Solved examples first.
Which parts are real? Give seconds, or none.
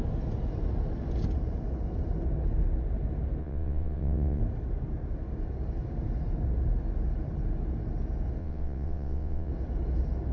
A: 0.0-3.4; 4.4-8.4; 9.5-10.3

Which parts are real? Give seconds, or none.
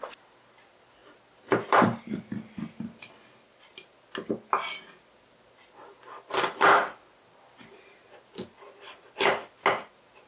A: 0.0-10.3